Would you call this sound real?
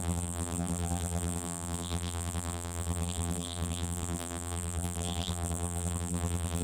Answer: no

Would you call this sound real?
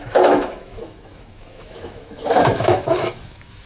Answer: no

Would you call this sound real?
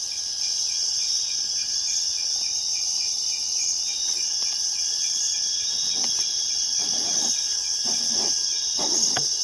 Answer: no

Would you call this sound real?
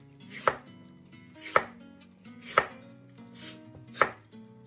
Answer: yes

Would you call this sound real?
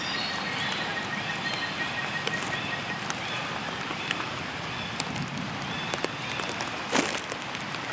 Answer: yes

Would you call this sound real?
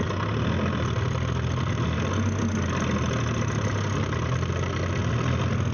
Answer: yes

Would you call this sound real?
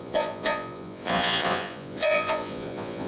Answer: no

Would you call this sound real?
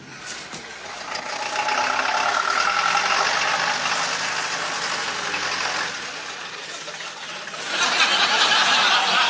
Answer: yes